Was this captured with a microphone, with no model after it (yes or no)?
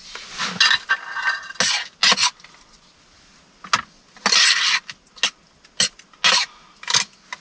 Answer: yes